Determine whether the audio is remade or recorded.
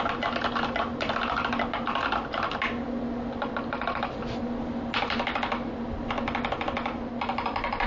recorded